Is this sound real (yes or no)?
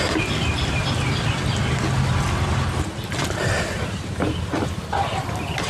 no